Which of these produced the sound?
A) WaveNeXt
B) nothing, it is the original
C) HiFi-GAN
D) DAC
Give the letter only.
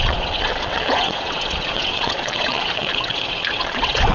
A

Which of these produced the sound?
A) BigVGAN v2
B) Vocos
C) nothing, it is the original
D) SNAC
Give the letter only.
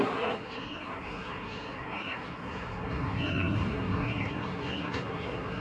D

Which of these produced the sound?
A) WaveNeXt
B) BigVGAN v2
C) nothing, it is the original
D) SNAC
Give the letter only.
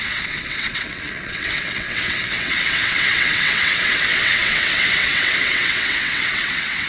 A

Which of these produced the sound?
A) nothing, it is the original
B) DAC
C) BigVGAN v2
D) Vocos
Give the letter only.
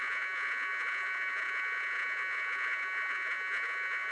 D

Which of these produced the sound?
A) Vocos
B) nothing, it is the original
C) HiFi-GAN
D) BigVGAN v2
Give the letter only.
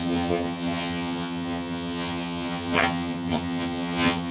C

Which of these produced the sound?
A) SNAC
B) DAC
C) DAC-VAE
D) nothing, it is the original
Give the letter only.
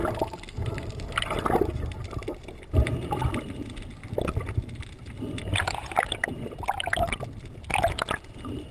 D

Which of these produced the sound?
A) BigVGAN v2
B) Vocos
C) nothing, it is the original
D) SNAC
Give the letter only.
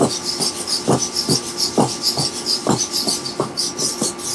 C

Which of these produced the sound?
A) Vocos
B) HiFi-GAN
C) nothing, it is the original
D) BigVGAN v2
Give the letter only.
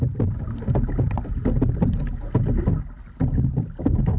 C